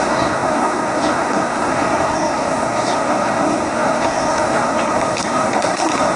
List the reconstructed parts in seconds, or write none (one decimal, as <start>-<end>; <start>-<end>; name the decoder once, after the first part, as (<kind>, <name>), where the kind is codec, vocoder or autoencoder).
0.0-6.2 (codec, SNAC)